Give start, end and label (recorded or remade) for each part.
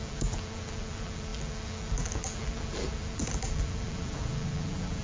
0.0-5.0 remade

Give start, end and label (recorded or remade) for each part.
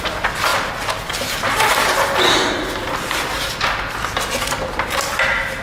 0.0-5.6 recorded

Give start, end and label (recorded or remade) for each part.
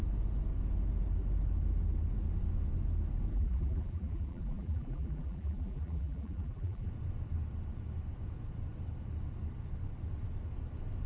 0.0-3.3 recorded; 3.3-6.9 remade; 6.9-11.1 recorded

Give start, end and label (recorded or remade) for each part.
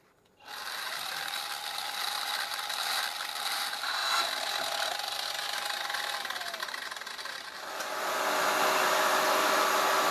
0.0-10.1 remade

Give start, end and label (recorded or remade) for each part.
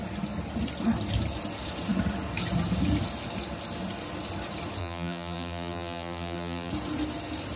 0.0-4.8 recorded; 4.8-6.7 remade; 6.7-7.6 recorded